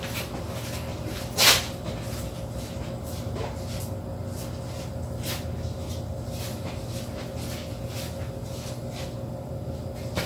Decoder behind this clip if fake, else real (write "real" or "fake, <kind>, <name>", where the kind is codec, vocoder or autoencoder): real